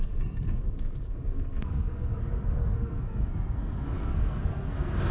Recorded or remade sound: remade